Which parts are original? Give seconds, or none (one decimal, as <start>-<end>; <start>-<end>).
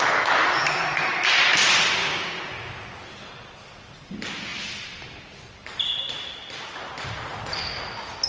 0.0-2.0; 2.7-8.3